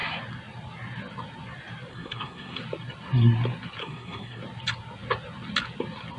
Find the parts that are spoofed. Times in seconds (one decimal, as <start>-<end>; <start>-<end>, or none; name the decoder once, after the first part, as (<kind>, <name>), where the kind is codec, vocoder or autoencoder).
1.9-2.6 (codec, SNAC); 3.8-4.4